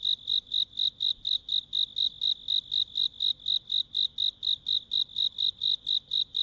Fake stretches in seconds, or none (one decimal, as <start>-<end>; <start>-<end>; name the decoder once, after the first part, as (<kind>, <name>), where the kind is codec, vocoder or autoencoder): none